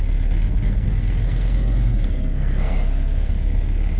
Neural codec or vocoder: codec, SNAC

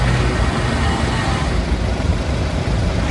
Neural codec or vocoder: none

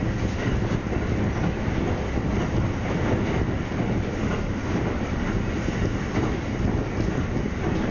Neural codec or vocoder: none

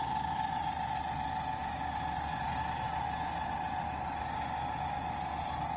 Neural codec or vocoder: none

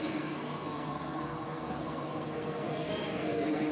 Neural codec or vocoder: codec, SNAC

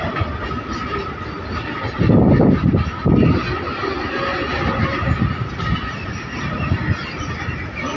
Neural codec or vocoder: none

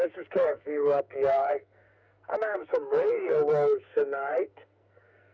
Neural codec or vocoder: codec, SNAC